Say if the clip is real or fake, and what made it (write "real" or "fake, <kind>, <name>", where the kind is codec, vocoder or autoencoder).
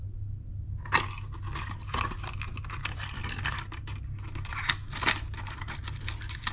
real